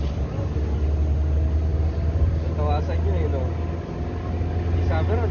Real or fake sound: real